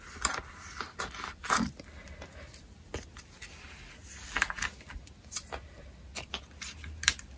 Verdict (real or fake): real